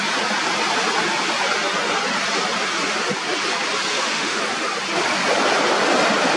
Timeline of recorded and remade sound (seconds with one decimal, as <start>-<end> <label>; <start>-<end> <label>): 0.0-3.9 recorded; 3.9-4.4 remade; 4.4-6.4 recorded